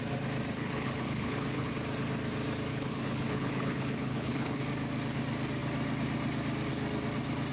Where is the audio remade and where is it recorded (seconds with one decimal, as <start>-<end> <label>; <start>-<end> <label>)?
0.0-0.6 recorded; 0.6-1.7 remade; 1.7-2.7 recorded; 2.7-4.6 remade; 4.6-7.5 recorded